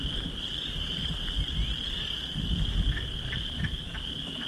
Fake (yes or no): no